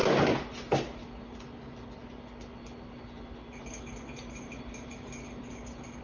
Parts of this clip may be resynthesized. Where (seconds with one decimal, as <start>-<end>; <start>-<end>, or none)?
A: none